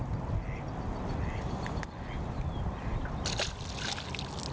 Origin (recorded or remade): recorded